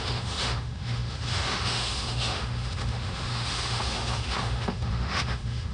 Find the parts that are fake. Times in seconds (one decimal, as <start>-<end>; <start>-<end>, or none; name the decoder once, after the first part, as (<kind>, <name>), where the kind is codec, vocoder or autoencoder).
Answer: 0.0-5.7 (autoencoder, DAC-VAE)